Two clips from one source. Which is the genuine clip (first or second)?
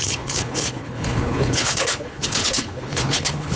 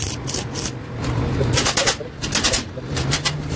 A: second